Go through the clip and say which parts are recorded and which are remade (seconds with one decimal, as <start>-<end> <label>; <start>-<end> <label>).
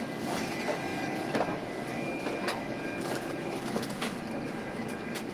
0.0-5.3 remade